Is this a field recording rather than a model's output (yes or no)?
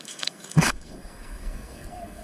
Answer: no